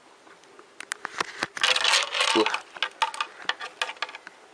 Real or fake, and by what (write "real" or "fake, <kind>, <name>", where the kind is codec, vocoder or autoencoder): real